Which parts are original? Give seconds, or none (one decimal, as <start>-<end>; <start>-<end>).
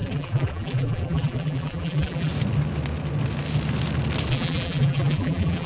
2.3-4.3